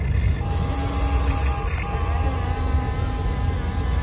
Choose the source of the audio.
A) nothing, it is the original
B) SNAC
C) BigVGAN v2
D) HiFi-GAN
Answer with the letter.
A